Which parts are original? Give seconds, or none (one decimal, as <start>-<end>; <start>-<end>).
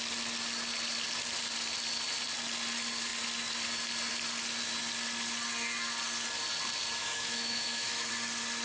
0.0-7.0; 8.1-8.6